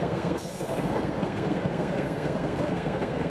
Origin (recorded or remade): remade